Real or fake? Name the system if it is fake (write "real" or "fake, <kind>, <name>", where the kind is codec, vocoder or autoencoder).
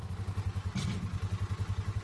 real